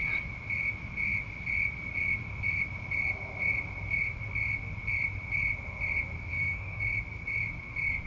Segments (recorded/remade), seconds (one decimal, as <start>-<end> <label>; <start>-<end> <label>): 0.0-6.3 recorded; 6.3-6.8 remade; 6.8-8.1 recorded

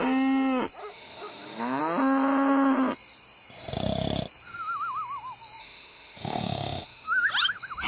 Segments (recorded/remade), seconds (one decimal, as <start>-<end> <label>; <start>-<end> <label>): 0.0-0.8 recorded; 0.8-1.8 remade; 1.8-5.6 recorded; 5.6-7.3 remade; 7.3-7.9 recorded

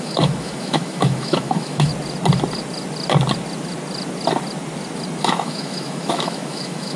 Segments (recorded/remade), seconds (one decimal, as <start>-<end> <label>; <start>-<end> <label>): 0.0-1.9 remade; 1.9-5.2 recorded; 5.2-7.0 remade

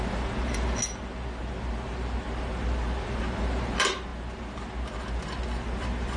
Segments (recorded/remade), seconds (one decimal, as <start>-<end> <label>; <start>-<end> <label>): 0.0-6.2 recorded

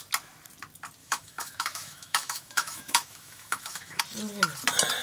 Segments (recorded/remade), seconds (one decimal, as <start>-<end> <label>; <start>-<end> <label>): 0.0-1.0 recorded; 1.0-4.0 remade; 4.0-5.0 recorded